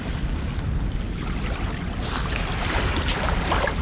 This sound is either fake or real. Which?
real